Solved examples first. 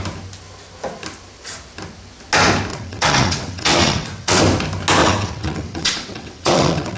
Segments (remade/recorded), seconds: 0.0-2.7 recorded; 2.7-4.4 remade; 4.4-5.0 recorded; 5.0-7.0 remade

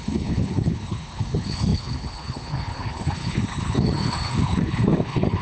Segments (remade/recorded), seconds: 0.0-5.4 remade

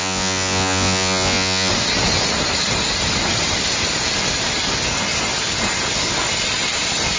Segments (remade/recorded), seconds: 0.0-1.7 remade; 1.7-7.2 recorded

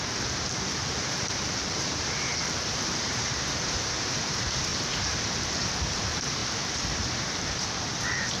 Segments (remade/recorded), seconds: 0.0-8.4 remade